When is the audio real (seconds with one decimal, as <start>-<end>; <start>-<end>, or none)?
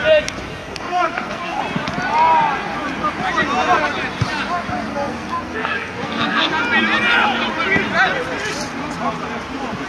0.0-0.6; 1.6-4.9; 6.5-9.9